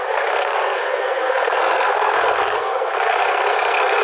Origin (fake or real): fake